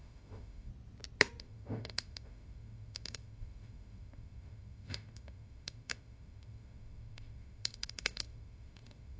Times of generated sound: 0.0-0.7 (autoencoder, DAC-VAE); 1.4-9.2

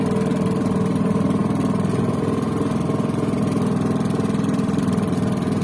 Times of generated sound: none

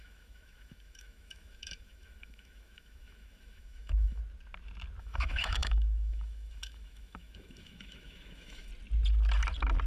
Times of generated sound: 0.0-4.2 (autoencoder, DAC-VAE); 5.0-8.7

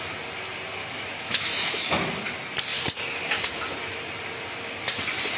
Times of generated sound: 0.8-2.2 (autoencoder, DAC-VAE)

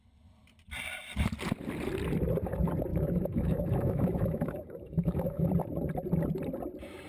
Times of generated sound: 2.9-5.5 (autoencoder, DAC-VAE)

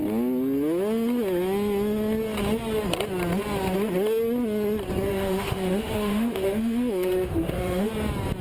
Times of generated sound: 5.1-7.9 (autoencoder, DAC-VAE)

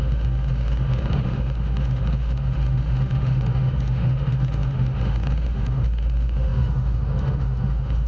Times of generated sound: 0.0-8.1 (autoencoder, DAC-VAE)

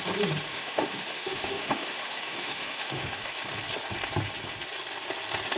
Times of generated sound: 0.5-3.3 (autoencoder, DAC-VAE)